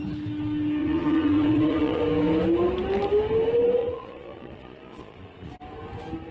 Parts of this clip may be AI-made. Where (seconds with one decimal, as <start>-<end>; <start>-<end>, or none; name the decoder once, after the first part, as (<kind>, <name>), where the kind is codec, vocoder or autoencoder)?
0.8-2.0 (vocoder, Vocos); 3.8-5.5